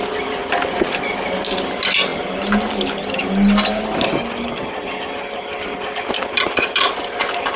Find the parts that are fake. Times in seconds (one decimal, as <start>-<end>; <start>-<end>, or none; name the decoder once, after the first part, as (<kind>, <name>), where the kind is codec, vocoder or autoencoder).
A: none